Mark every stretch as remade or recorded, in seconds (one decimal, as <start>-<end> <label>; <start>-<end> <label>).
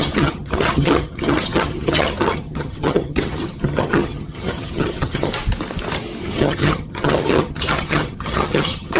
0.0-5.3 remade; 5.3-6.2 recorded; 6.2-9.0 remade